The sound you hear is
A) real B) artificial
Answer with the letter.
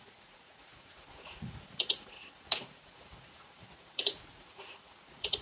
B